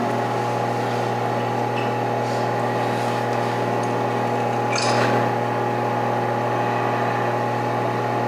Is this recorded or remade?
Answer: recorded